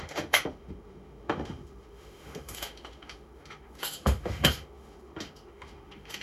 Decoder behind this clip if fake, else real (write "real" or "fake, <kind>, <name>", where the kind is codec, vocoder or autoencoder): fake, autoencoder, DAC-VAE